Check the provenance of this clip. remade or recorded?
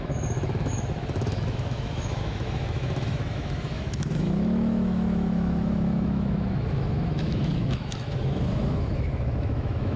remade